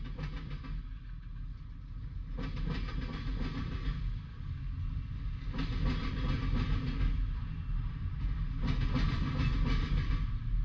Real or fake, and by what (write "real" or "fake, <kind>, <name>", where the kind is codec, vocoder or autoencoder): real